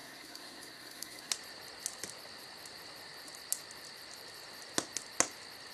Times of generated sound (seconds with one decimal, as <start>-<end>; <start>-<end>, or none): 0.0-1.3